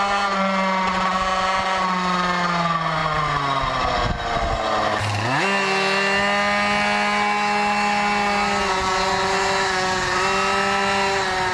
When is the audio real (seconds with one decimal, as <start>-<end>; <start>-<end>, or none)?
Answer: 0.0-11.5